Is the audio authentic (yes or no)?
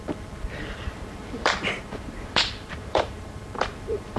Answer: no